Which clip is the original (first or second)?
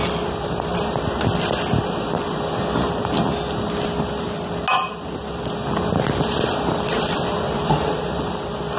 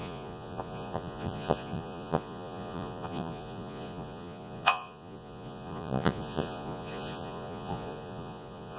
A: first